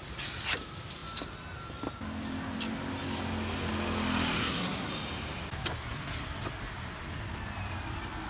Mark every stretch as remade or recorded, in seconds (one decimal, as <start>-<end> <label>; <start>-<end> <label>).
0.0-4.4 recorded; 4.4-4.9 remade; 4.9-8.3 recorded